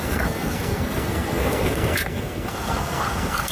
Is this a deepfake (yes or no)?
yes